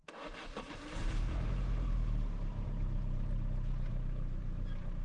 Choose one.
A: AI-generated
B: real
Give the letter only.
A